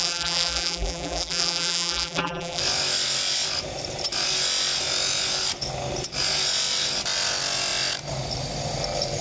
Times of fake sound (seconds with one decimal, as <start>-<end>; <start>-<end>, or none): 0.0-2.6